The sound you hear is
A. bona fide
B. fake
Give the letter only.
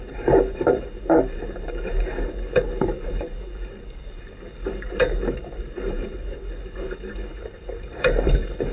B